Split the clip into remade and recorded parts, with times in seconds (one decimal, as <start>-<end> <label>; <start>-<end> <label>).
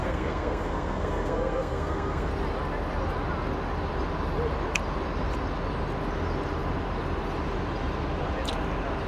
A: 0.0-2.3 remade; 2.3-9.1 recorded